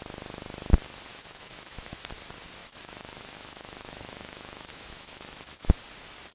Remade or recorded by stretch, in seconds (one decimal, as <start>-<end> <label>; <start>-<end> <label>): 0.0-1.1 recorded; 1.1-2.0 remade; 2.0-2.6 recorded; 2.6-5.7 remade; 5.7-6.3 recorded